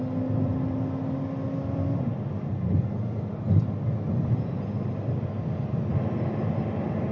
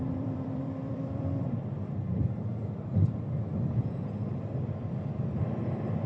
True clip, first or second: first